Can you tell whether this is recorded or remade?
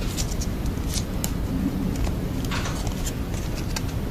recorded